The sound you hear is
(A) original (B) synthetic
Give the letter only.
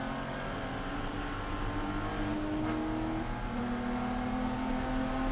A